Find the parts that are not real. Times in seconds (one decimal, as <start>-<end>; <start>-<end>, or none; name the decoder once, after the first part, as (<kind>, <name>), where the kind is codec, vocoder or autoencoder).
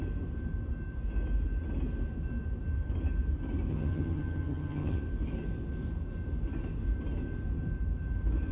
3.7-5.0 (vocoder, HiFi-GAN)